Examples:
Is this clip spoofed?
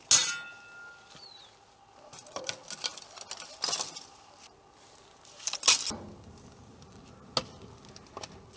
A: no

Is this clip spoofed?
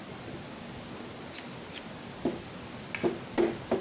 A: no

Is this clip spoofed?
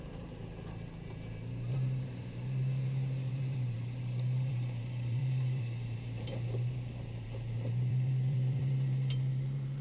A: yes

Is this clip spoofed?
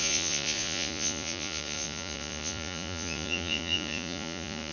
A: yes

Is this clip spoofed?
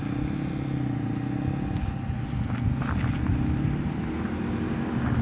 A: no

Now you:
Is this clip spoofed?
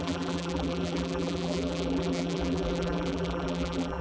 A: yes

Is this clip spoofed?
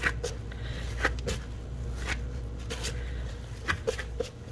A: no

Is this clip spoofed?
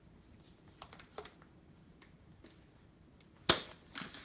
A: no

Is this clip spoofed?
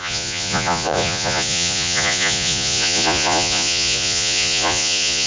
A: yes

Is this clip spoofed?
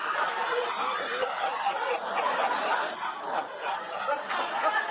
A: no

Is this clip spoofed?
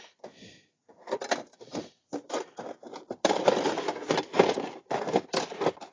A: no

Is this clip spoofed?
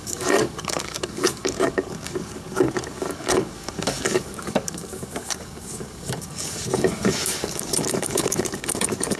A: yes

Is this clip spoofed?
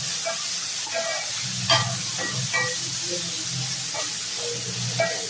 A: no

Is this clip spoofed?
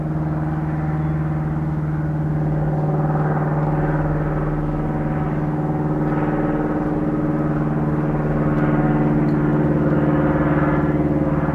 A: no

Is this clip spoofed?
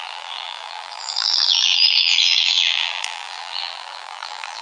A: yes